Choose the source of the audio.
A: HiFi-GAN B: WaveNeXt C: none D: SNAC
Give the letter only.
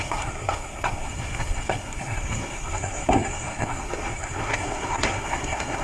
D